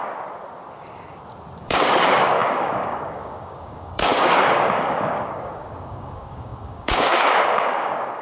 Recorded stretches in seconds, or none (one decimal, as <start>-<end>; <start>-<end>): 0.0-1.6